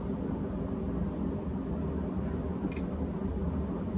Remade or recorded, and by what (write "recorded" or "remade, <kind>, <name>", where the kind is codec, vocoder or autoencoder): recorded